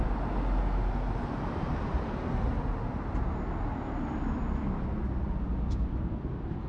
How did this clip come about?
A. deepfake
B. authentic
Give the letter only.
B